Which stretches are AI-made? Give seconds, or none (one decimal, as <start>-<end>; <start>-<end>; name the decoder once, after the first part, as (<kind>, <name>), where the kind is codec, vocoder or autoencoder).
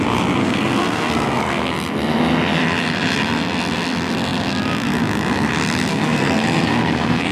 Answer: 0.4-1.7 (codec, SNAC); 5.9-7.3